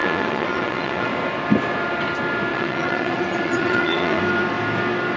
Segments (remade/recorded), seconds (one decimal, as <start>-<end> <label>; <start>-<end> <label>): 0.0-1.1 remade; 1.1-2.5 recorded; 2.5-4.2 remade; 4.2-5.2 recorded